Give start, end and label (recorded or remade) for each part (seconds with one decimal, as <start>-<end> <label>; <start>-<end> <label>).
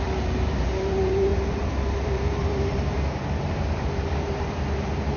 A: 0.0-5.2 remade